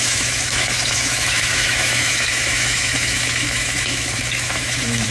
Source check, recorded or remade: remade